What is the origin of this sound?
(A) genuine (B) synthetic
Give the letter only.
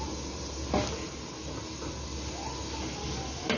A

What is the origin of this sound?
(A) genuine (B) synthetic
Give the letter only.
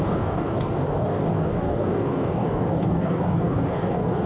B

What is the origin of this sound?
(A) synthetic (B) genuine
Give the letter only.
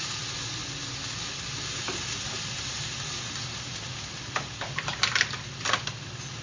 B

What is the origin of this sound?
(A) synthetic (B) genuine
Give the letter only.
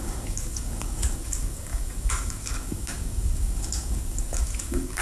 A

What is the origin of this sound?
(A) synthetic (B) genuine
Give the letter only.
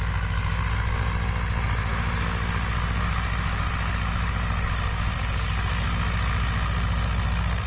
B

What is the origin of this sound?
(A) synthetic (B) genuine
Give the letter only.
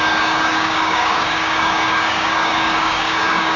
A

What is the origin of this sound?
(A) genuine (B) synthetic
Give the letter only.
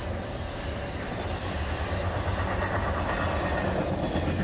A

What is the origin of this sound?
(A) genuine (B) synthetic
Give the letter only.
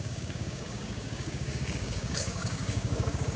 B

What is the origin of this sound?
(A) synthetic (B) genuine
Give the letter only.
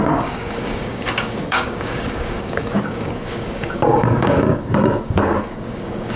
A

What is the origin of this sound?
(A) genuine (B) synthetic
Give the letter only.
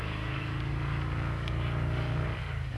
B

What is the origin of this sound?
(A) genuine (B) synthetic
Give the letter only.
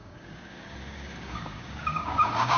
B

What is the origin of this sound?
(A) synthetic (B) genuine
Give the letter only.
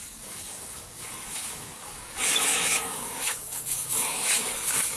A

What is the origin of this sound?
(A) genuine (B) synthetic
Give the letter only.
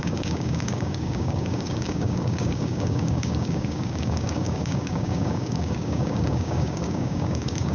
B